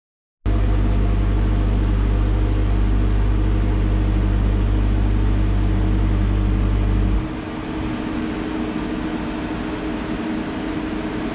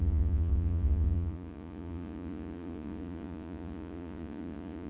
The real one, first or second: first